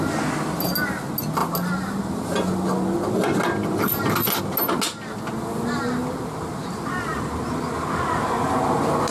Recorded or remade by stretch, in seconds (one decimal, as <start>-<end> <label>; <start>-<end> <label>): 0.0-9.1 recorded